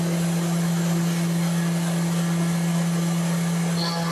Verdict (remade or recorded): recorded